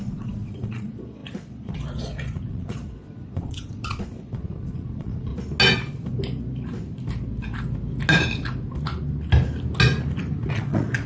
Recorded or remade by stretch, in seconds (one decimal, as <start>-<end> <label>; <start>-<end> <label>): 0.0-5.3 remade; 5.3-10.5 recorded; 10.5-11.1 remade